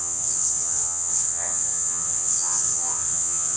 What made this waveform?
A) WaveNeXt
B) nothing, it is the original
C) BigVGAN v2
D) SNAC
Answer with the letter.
A